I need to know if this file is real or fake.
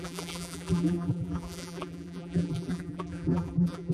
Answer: fake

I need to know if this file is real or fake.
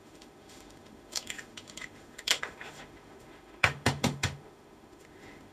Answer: fake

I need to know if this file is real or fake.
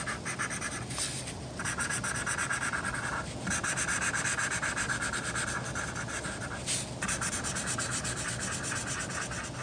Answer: real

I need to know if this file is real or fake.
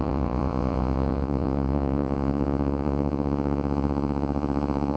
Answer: fake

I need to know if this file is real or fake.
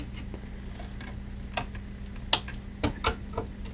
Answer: real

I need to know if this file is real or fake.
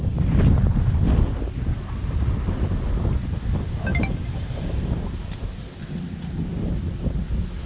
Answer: real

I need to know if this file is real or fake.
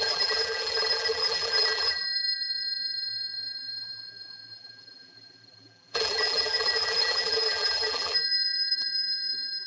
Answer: fake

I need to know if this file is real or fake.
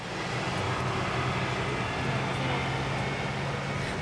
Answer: real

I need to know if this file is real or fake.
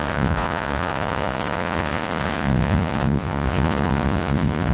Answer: fake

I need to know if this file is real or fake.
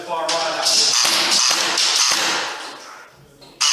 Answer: real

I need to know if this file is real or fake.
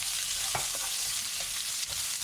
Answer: real